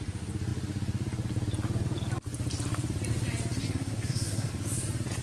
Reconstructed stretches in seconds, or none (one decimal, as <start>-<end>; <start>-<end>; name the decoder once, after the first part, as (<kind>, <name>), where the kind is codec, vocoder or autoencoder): 3.6-4.5 (codec, SNAC)